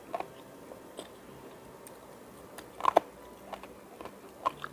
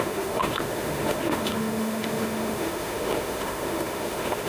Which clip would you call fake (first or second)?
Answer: second